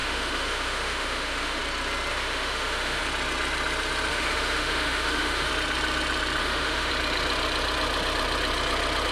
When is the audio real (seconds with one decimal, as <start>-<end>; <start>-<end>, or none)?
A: 1.6-2.1; 3.0-4.1; 5.5-6.4; 6.9-9.1